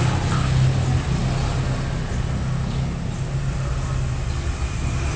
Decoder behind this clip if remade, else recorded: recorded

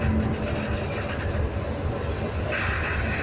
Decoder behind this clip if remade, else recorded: recorded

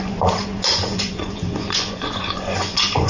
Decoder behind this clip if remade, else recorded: remade, vocoder, Vocos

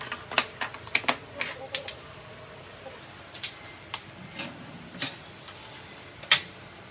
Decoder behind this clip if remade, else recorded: recorded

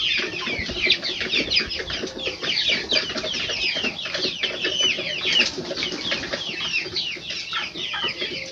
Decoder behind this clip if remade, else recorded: recorded